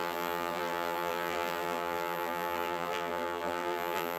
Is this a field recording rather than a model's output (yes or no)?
no